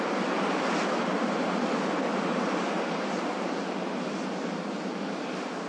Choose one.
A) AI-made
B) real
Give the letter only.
B